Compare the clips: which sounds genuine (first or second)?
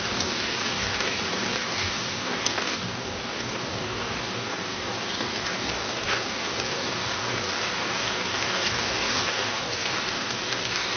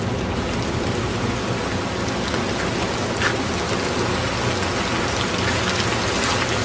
second